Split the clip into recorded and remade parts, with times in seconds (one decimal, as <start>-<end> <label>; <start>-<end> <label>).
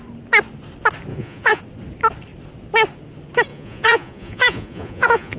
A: 0.0-1.1 recorded; 1.1-1.6 remade; 1.6-3.5 recorded; 3.5-5.4 remade